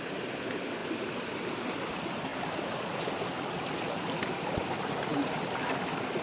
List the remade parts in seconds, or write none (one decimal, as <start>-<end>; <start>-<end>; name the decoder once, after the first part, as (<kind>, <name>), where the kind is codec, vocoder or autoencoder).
none